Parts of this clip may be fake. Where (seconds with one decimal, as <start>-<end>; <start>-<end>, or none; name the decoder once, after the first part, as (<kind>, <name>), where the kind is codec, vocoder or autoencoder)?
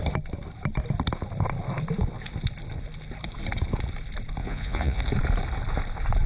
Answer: 4.4-5.0 (vocoder, Vocos)